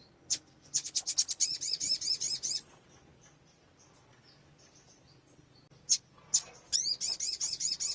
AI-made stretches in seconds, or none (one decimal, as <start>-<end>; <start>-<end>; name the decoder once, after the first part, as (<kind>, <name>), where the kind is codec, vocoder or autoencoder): none